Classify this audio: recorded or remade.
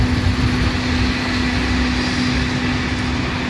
recorded